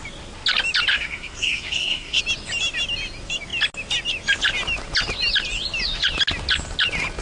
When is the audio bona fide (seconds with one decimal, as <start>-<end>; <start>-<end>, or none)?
0.0-0.9; 2.2-7.2